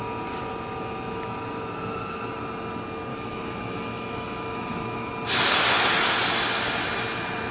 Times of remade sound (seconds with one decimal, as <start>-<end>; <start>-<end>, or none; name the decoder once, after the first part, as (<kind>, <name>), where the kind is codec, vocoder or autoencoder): 3.1-5.1 (autoencoder, DAC-VAE)